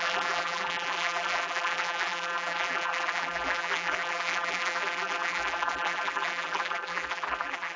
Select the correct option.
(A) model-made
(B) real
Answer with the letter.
A